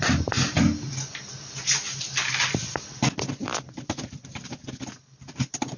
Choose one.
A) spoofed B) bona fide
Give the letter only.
B